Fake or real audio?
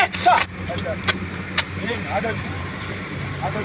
fake